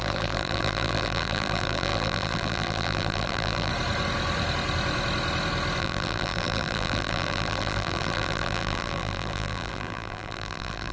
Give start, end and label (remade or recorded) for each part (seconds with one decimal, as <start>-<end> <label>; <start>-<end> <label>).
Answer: 0.0-3.7 remade; 3.7-5.8 recorded; 5.8-10.9 remade